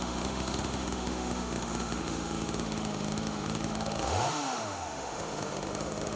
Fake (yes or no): yes